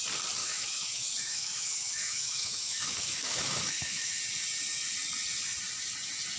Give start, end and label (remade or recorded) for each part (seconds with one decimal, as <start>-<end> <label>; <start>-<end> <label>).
0.0-0.4 recorded; 0.4-4.2 remade; 4.2-6.4 recorded